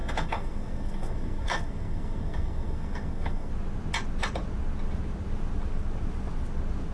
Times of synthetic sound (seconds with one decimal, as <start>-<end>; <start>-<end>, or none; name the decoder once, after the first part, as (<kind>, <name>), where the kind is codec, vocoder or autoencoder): 0.0-3.5 (codec, SNAC)